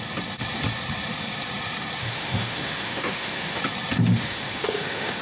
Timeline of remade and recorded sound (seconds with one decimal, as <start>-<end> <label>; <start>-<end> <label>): 0.0-2.0 recorded; 2.0-3.6 remade; 3.6-4.1 recorded; 4.1-5.2 remade

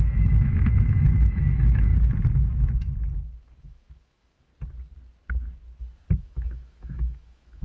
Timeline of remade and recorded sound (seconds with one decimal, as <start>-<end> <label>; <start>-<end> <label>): 0.0-1.9 remade; 1.9-3.6 recorded; 3.6-4.5 remade; 4.5-6.2 recorded; 6.2-7.6 remade

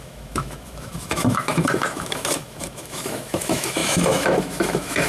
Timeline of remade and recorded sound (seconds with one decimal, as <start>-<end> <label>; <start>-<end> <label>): 0.0-5.1 remade

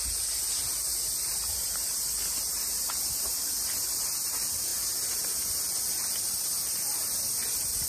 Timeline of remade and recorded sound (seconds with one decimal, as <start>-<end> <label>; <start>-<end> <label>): 0.0-7.9 recorded

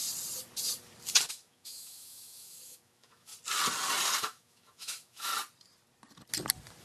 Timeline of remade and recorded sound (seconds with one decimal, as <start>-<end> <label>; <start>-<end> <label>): 0.0-1.3 recorded; 1.3-3.3 remade; 3.3-4.2 recorded; 4.2-5.3 remade; 5.3-6.8 recorded

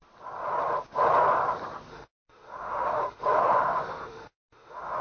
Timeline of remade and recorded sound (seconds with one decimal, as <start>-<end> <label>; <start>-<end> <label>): 0.0-1.9 recorded; 1.9-5.0 remade

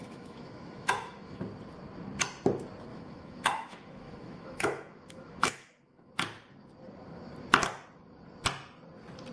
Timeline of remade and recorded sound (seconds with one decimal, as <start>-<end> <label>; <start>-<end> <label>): 0.0-1.4 remade; 1.4-2.9 recorded; 2.9-6.1 remade; 6.1-9.3 recorded